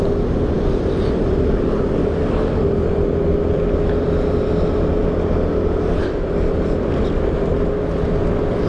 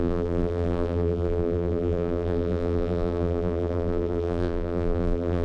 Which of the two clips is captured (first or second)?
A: first